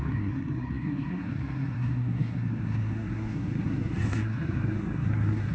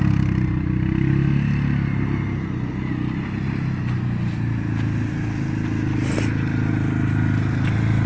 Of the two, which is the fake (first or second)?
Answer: first